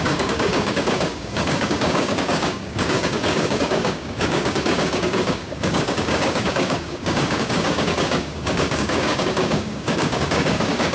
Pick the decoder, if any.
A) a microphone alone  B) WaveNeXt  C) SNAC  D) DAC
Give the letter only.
D